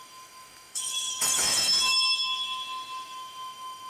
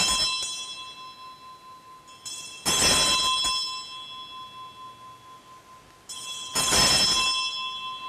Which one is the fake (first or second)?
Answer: first